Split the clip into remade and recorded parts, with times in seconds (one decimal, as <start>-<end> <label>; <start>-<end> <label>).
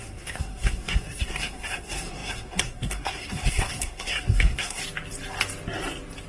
0.0-4.8 remade; 4.8-6.3 recorded